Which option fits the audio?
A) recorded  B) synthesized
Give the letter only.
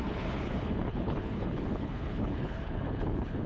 B